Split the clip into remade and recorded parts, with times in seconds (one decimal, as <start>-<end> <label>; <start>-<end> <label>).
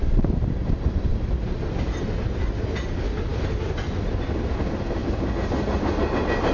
0.0-6.5 recorded